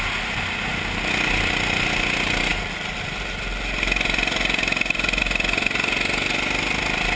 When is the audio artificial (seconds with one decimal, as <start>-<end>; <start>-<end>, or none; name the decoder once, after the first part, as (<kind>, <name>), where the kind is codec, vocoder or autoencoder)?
none